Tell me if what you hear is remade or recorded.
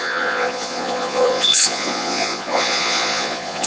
remade